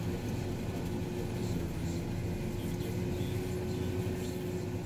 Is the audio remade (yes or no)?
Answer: no